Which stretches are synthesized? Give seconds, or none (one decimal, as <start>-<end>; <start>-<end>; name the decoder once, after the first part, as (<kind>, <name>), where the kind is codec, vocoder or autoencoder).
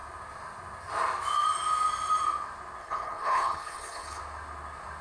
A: 2.8-4.2 (codec, HILCodec)